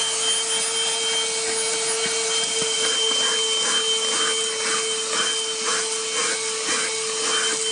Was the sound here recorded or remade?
recorded